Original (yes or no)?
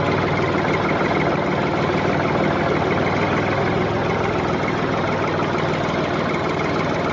no